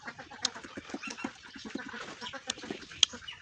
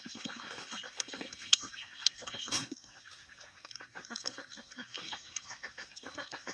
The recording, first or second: first